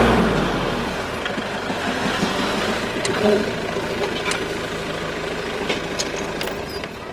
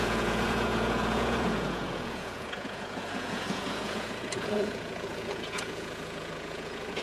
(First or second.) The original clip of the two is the first